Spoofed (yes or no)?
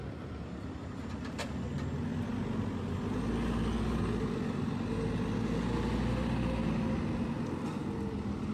no